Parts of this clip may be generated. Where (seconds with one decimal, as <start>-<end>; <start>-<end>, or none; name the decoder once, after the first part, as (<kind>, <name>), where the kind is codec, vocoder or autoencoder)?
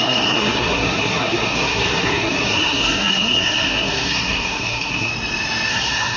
0.0-5.1 (codec, SNAC); 5.7-6.2